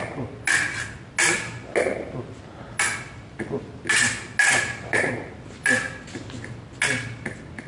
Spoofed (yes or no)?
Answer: no